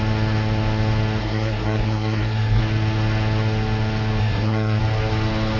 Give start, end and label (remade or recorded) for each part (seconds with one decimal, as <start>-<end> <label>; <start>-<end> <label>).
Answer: 0.0-1.2 recorded; 1.2-2.6 remade; 2.6-4.2 recorded; 4.2-4.8 remade; 4.8-5.6 recorded